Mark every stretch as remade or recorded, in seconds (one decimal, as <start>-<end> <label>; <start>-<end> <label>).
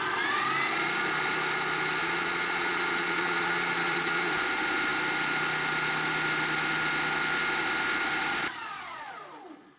0.0-2.0 recorded; 2.0-4.3 remade; 4.3-8.3 recorded; 8.3-9.1 remade; 9.1-9.8 recorded